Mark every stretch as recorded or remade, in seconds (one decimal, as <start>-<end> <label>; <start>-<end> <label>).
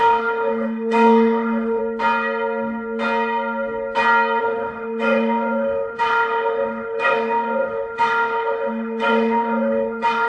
0.0-1.8 remade; 1.8-4.4 recorded; 4.4-10.3 remade